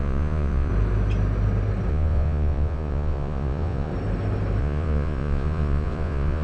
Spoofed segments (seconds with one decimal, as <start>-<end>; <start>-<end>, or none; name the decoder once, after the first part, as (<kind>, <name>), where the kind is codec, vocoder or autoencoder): 0.0-0.7 (vocoder, Vocos); 1.9-3.9; 4.6-6.4